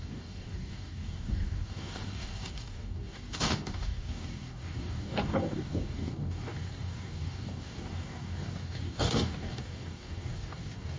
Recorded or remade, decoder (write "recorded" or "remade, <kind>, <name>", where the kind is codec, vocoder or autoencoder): remade, codec, DAC